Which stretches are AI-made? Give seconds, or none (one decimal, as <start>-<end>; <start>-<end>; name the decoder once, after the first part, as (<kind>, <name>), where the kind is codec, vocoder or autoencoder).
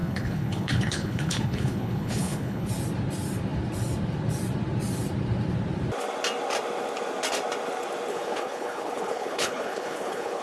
0.0-2.7 (codec, HILCodec); 8.1-10.4